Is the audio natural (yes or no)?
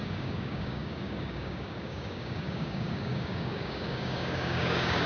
no